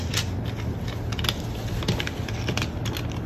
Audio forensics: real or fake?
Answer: real